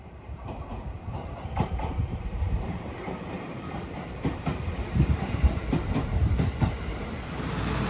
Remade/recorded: remade